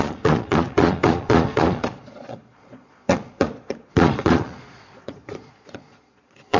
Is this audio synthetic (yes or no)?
yes